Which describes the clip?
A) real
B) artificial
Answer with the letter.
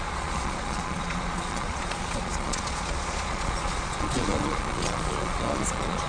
B